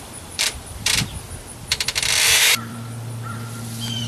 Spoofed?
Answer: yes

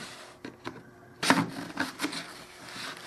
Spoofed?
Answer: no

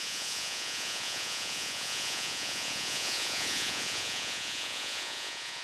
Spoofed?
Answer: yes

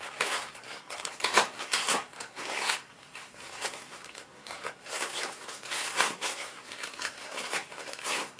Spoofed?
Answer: yes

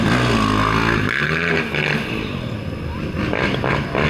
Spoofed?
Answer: no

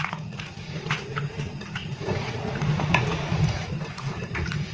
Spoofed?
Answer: yes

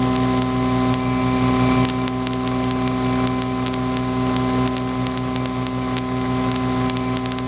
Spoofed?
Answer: no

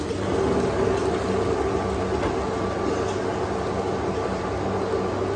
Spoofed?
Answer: no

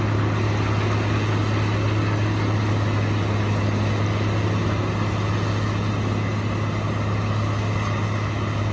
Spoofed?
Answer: no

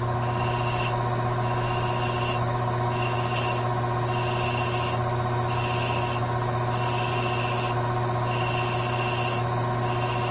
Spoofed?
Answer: no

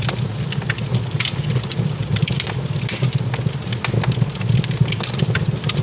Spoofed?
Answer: no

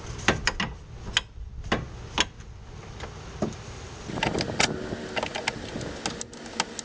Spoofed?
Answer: no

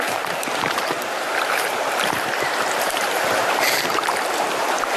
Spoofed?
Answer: yes